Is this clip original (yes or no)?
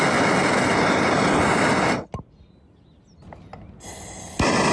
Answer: yes